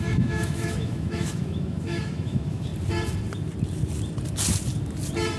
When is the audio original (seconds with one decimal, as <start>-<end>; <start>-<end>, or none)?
2.7-5.4